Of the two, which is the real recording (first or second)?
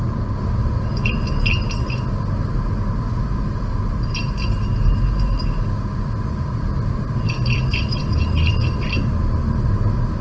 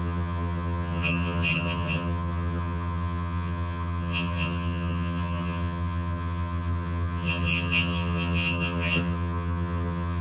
first